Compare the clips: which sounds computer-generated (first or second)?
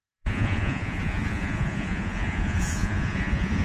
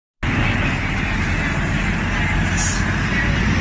first